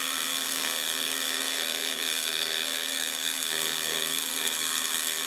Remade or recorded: remade